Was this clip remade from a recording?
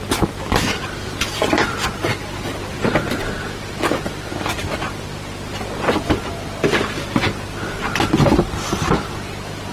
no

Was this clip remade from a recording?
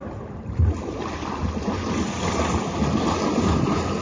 no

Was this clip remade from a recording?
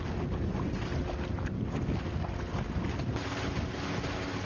no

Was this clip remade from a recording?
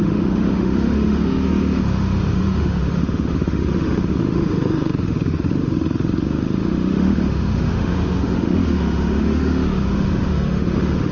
yes